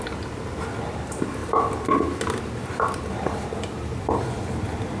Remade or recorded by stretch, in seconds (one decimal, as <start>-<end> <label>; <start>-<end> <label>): 0.0-1.4 recorded; 1.4-2.2 remade; 2.2-5.0 recorded